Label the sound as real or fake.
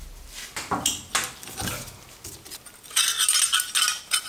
real